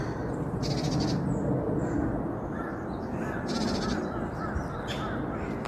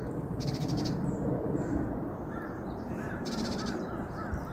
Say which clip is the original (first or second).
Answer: first